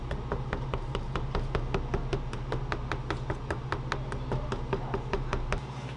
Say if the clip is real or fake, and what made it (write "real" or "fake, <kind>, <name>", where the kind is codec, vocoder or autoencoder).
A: real